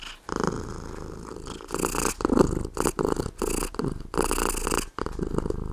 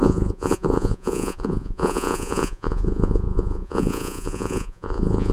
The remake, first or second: second